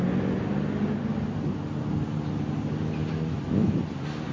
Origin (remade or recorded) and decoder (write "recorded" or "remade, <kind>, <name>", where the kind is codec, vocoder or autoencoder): recorded